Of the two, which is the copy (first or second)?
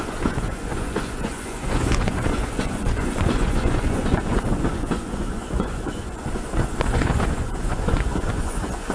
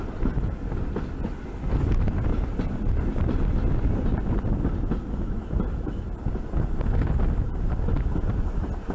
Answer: first